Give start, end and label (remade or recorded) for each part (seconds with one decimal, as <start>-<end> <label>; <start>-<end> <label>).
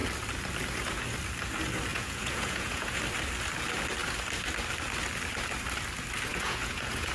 0.0-1.9 recorded; 1.9-3.0 remade; 3.0-6.3 recorded; 6.3-7.1 remade